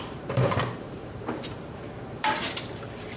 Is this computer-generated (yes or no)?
yes